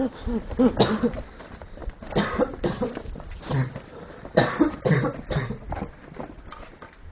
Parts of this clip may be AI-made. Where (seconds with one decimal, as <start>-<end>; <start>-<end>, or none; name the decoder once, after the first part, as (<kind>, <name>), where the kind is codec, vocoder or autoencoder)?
none